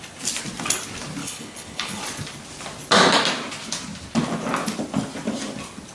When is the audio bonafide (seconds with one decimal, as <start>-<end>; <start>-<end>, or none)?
0.0-1.2; 2.0-5.9